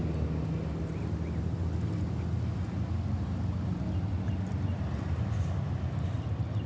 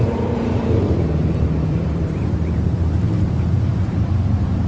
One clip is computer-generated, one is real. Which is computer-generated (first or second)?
second